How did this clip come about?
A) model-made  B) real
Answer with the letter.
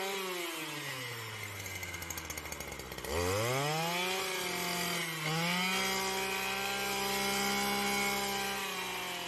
B